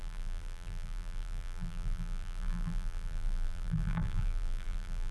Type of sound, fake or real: fake